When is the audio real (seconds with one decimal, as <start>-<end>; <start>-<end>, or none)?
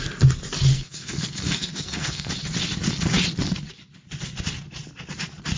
0.0-0.7; 2.3-5.6